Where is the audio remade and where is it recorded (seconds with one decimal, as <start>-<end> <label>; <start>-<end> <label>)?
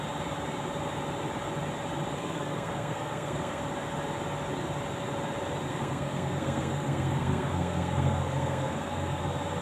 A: 0.0-2.1 recorded; 2.1-3.6 remade; 3.6-5.7 recorded; 5.7-9.2 remade; 9.2-9.6 recorded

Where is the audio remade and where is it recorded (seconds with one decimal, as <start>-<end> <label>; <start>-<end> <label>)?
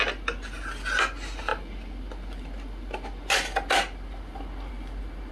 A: 0.0-5.3 recorded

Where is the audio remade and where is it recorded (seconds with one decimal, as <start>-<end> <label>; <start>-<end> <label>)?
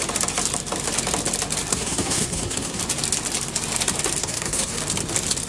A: 0.0-1.7 recorded; 1.7-2.8 remade; 2.8-4.2 recorded; 4.2-4.8 remade; 4.8-5.5 recorded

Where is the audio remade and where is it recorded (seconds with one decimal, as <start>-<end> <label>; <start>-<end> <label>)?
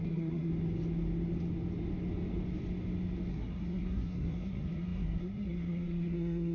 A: 0.0-0.5 remade; 0.5-3.3 recorded; 3.3-6.5 remade